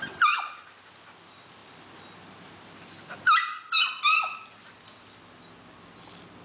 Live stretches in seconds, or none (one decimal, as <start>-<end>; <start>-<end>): 0.0-6.4